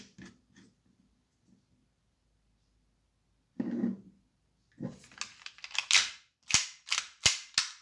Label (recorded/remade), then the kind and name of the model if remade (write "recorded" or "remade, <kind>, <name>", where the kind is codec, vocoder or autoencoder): recorded